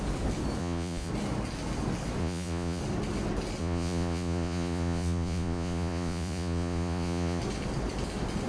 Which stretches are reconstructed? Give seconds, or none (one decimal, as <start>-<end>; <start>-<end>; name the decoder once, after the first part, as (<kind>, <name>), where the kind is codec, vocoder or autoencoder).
0.6-1.1 (vocoder, Vocos); 2.2-2.8; 3.6-7.4